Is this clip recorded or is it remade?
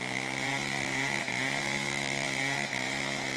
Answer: remade